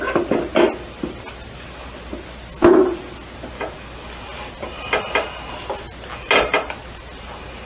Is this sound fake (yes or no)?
no